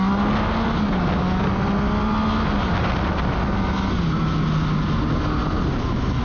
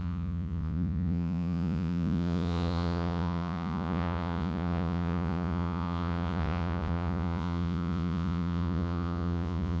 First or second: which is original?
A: first